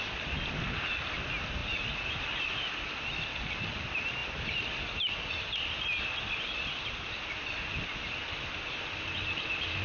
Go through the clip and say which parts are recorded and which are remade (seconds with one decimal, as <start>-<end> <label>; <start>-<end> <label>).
0.0-9.8 recorded